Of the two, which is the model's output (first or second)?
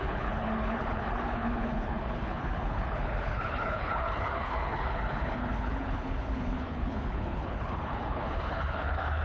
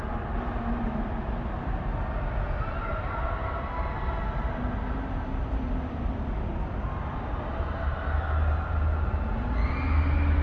first